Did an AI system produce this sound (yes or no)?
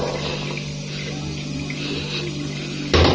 no